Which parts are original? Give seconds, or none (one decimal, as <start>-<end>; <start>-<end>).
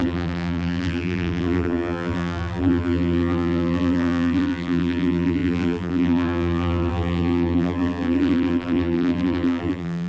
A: none